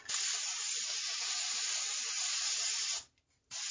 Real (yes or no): yes